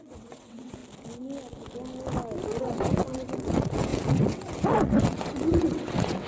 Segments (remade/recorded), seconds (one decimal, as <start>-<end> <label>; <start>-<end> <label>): 0.0-0.8 remade; 0.8-2.6 recorded; 2.6-6.3 remade